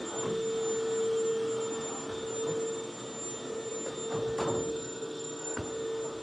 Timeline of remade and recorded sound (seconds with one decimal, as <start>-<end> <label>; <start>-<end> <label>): 0.0-4.7 recorded; 4.7-5.6 remade; 5.6-6.2 recorded